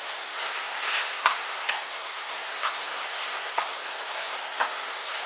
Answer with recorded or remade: remade